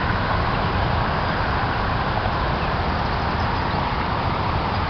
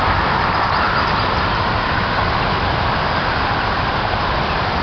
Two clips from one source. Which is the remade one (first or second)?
second